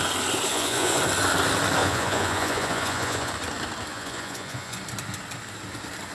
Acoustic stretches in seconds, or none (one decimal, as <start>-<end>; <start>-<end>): 0.0-0.5; 1.0-1.8; 3.3-3.9; 4.8-6.1